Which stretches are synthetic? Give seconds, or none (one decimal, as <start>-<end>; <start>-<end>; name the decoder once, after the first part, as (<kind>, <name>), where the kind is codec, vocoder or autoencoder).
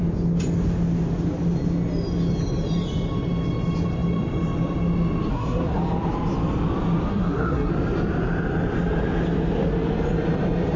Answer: 5.3-5.8 (codec, SNAC); 7.1-7.7